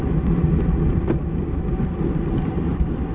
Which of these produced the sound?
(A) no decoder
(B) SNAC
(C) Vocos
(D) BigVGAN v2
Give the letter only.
A